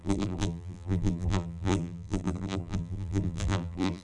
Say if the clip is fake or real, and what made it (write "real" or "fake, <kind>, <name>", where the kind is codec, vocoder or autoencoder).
fake, vocoder, BigVGAN v2